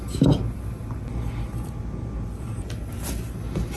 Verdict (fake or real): real